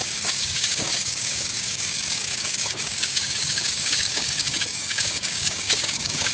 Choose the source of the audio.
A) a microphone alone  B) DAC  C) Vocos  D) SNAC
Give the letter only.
B